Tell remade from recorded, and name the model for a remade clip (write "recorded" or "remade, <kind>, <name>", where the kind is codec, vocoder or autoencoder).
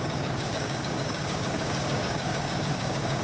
remade, codec, DAC